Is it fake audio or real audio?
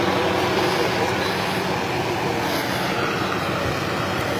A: real